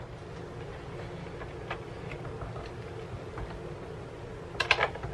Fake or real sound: real